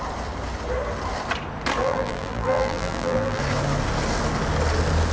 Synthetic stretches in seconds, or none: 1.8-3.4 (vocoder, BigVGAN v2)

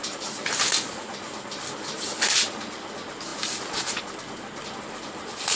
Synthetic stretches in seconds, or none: 0.0-0.6 (vocoder, BigVGAN v2)

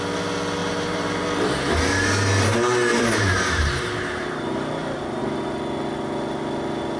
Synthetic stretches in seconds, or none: 0.6-1.7 (vocoder, BigVGAN v2); 2.9-5.2

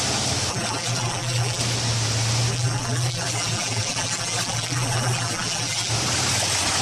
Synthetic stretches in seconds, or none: 0.5-1.6 (vocoder, BigVGAN v2); 2.5-5.9

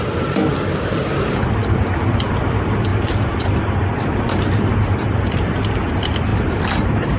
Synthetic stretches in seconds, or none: 6.3-7.2 (vocoder, BigVGAN v2)